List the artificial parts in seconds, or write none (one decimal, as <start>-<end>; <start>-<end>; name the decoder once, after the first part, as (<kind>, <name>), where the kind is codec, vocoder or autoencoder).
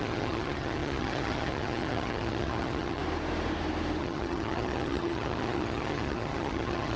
0.0-3.0 (vocoder, HiFi-GAN); 4.0-7.0